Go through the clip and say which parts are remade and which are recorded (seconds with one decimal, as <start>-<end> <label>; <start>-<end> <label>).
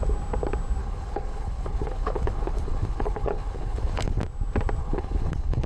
0.0-0.8 recorded; 0.8-4.2 remade; 4.2-4.8 recorded; 4.8-5.7 remade